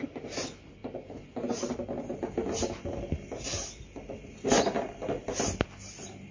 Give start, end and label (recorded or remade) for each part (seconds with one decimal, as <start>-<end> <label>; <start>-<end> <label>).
0.0-6.3 recorded

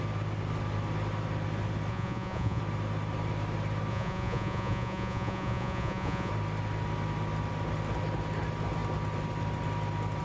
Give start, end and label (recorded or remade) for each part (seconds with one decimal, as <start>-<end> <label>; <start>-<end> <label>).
0.0-1.9 recorded; 1.9-2.6 remade; 2.6-3.9 recorded; 3.9-6.3 remade; 6.3-10.2 recorded

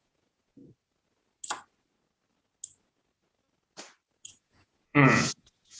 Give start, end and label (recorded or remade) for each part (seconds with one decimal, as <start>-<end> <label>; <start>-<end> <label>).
0.0-0.6 remade; 0.6-4.1 recorded; 4.1-5.8 remade

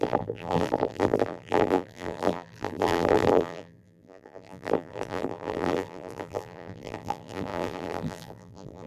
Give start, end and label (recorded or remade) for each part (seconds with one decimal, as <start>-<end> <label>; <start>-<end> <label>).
0.0-8.9 remade

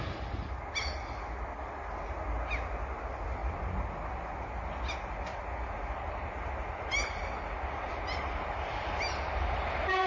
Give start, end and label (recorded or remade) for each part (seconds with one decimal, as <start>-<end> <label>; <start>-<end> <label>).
0.0-10.1 recorded

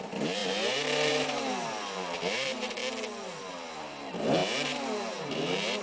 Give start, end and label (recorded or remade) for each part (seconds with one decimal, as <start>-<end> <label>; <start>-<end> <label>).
0.0-2.8 remade; 2.8-3.5 recorded; 3.5-5.8 remade

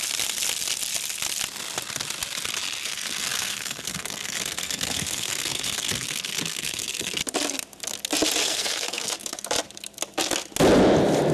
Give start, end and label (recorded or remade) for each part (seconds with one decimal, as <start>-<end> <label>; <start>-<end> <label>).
0.0-2.8 recorded; 2.8-7.2 remade; 7.2-8.4 recorded; 8.4-9.5 remade; 9.5-11.3 recorded

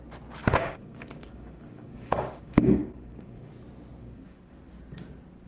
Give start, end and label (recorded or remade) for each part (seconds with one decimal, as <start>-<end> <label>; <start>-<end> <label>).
0.0-0.4 recorded; 0.4-3.5 remade; 3.5-4.0 recorded; 4.0-4.5 remade; 4.5-5.5 recorded